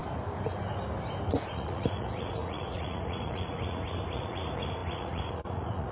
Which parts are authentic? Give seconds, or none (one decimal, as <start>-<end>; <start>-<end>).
0.0-1.3